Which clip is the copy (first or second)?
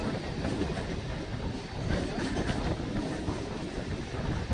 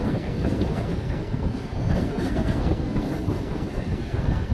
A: second